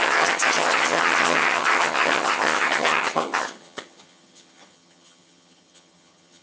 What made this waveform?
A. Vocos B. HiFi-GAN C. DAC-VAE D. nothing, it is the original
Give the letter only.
B